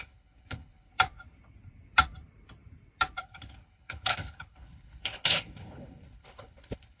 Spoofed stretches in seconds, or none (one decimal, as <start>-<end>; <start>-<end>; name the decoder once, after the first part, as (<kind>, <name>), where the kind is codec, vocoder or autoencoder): 0.0-0.9 (codec, HILCodec); 3.2-7.0